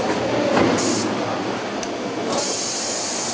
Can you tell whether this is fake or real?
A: real